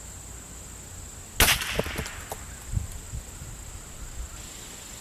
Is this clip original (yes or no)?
yes